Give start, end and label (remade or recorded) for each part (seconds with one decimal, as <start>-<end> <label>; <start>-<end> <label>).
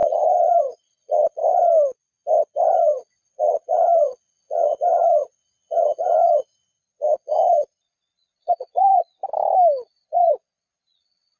0.0-1.4 remade; 1.4-2.8 recorded; 2.8-9.2 remade; 9.2-9.9 recorded; 9.9-11.4 remade